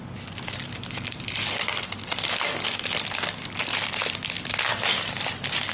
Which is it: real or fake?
real